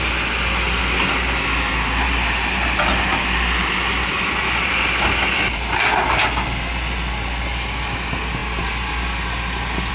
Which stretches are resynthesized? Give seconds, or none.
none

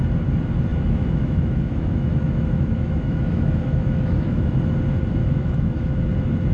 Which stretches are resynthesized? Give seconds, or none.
0.7-4.6 (autoencoder, DAC-VAE); 5.2-6.0

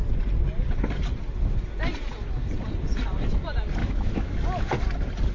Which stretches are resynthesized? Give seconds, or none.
3.8-4.4 (autoencoder, DAC-VAE)

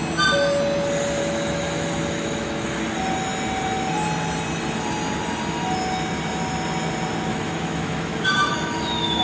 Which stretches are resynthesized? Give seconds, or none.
1.2-2.8 (autoencoder, DAC-VAE); 7.3-9.2

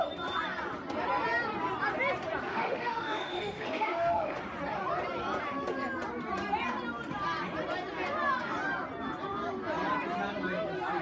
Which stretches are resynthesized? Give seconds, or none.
2.5-4.4 (autoencoder, DAC-VAE)

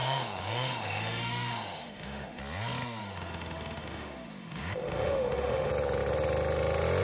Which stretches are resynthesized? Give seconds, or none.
0.0-2.4 (autoencoder, DAC-VAE); 3.0-5.7

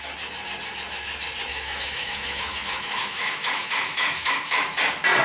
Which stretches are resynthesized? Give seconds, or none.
1.5-4.6 (autoencoder, DAC-VAE)

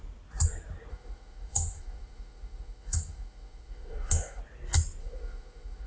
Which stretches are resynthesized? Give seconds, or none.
0.9-4.4 (autoencoder, DAC-VAE); 5.0-5.9